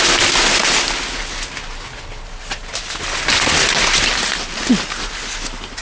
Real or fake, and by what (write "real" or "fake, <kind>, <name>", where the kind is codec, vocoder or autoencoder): real